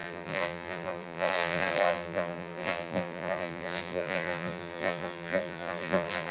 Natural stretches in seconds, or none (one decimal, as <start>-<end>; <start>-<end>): none